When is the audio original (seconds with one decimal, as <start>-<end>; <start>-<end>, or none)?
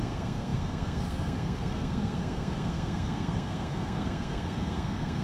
none